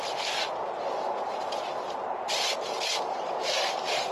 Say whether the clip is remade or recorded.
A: recorded